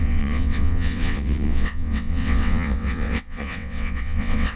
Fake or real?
fake